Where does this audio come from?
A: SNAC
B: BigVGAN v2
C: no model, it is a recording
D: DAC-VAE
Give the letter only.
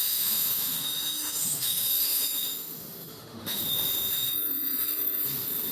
D